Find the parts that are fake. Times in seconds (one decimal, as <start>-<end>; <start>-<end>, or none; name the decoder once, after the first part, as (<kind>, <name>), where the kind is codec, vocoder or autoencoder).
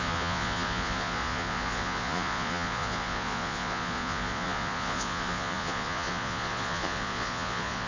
0.0-7.9 (vocoder, Vocos)